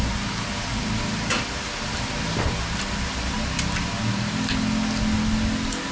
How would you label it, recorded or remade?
recorded